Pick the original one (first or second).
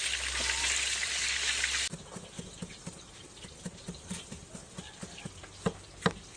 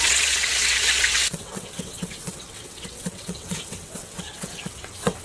first